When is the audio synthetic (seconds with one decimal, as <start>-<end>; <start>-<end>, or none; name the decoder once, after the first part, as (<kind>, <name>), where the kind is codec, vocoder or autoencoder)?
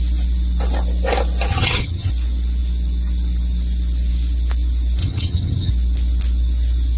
1.5-2.1 (vocoder, HiFi-GAN); 5.0-5.7